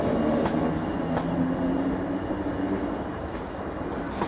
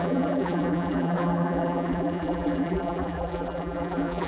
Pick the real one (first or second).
first